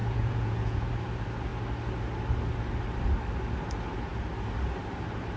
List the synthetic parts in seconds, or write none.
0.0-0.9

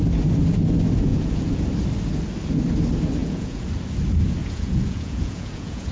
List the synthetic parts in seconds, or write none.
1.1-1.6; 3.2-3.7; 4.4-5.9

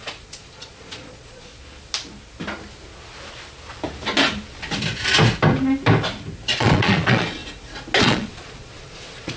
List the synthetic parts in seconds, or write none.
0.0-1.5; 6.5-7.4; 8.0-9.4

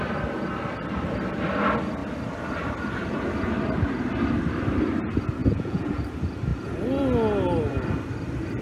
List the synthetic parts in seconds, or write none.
5.4-6.0

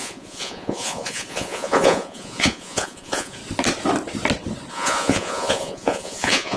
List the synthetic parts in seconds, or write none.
0.0-3.4; 4.7-6.6